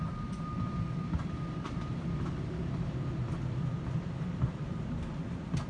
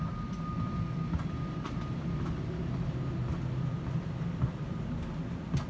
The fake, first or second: first